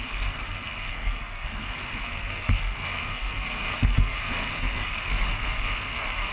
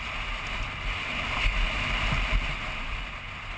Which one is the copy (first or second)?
first